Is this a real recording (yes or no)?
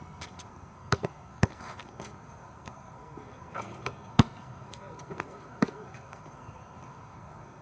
no